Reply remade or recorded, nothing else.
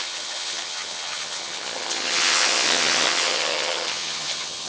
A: remade